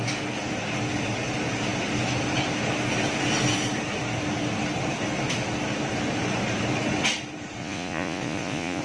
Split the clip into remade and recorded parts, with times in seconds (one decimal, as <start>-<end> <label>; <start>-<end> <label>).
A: 0.0-7.6 recorded; 7.6-8.8 remade